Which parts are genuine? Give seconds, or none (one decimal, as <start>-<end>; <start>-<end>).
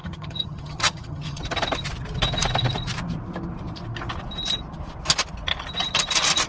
1.4-6.5